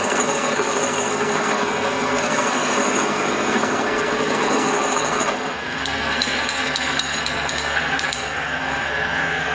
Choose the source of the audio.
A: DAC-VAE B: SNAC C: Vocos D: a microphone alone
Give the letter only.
B